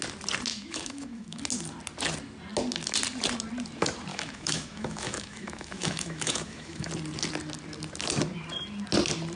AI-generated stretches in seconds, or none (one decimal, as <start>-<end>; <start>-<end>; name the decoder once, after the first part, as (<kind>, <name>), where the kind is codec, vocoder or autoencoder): 0.5-1.4 (autoencoder, DAC-VAE); 4.1-6.9